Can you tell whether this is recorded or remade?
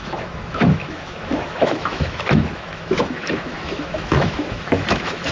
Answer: remade